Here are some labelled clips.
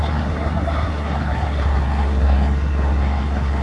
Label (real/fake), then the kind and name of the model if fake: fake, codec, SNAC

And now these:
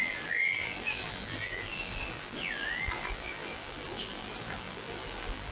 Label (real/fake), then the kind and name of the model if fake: fake, vocoder, BigVGAN v2